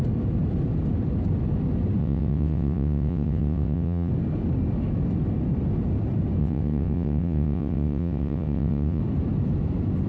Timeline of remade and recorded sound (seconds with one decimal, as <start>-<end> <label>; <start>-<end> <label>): 0.0-2.0 recorded; 2.0-4.1 remade; 4.1-6.4 recorded; 6.4-9.0 remade; 9.0-10.1 recorded